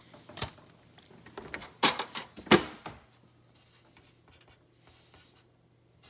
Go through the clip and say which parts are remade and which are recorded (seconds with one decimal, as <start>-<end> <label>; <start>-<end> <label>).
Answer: 0.0-1.6 recorded; 1.6-2.4 remade; 2.4-6.1 recorded